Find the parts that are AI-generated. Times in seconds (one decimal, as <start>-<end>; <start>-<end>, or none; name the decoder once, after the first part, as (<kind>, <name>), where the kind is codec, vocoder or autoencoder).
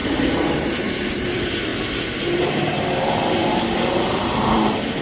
0.0-1.7 (vocoder, BigVGAN v2); 2.4-5.0